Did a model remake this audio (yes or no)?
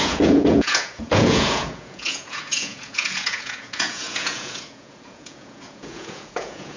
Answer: yes